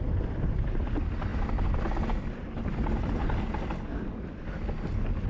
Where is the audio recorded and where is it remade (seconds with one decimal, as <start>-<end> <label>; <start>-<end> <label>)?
0.0-5.3 recorded